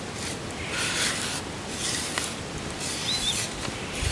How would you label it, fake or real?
real